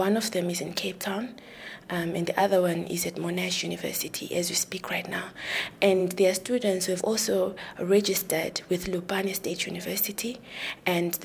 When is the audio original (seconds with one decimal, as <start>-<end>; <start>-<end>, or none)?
0.0-2.4; 3.7-6.0; 7.0-11.2